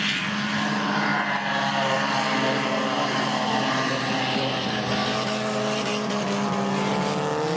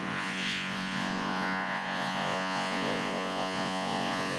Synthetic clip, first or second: second